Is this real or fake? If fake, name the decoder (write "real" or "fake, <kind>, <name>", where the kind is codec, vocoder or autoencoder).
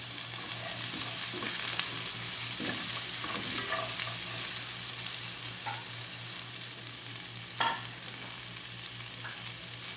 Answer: real